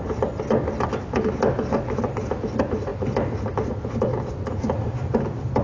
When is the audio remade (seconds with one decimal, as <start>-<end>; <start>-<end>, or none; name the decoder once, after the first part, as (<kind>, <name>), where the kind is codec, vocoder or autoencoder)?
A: none